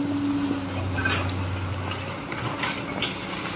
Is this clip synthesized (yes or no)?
no